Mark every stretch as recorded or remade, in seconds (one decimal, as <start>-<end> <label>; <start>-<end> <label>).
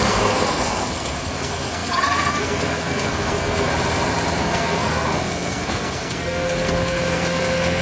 0.0-3.7 remade; 3.7-4.4 recorded; 4.4-7.8 remade